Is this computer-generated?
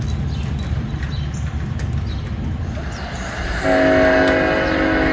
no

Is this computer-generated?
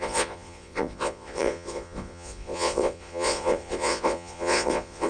yes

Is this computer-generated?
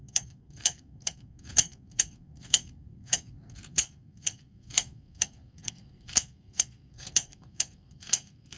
yes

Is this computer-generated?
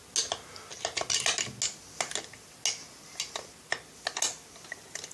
no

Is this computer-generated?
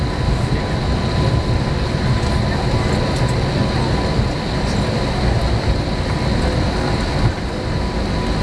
no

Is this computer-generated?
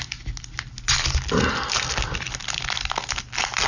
no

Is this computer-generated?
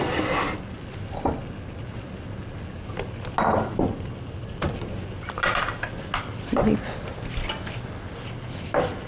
no